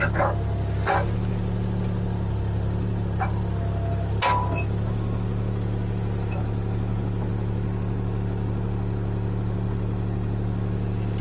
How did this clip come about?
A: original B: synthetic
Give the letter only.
A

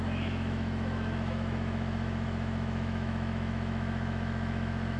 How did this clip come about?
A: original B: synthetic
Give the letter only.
B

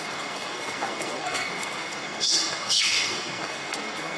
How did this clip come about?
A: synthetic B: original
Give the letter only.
A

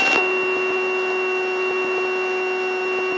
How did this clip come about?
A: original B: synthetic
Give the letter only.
A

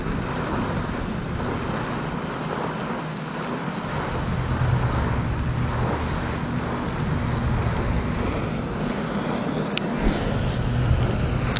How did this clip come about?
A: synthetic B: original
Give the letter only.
B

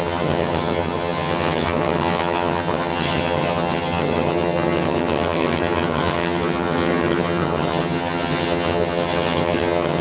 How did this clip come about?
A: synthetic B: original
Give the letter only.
A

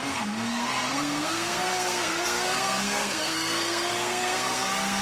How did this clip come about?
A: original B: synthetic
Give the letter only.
B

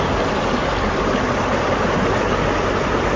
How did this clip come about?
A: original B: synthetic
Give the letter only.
A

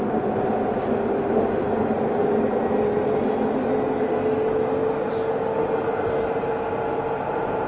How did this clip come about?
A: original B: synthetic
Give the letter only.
A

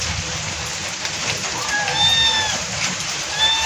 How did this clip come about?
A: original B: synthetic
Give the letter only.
A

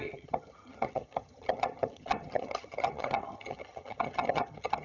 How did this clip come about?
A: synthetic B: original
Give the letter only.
A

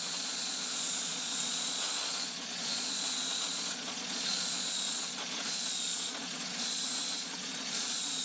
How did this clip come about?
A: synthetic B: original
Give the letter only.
A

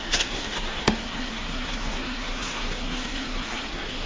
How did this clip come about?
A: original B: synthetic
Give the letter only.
B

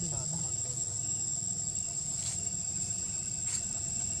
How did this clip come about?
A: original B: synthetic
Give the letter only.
A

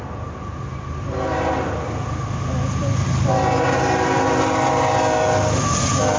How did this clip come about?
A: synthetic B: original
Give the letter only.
B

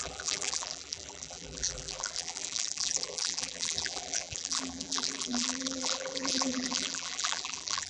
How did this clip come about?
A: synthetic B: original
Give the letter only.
A